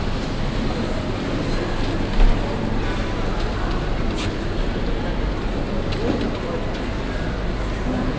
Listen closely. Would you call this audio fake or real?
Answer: real